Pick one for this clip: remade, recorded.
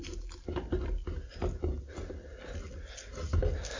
recorded